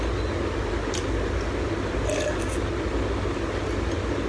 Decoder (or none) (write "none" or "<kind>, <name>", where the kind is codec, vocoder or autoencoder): none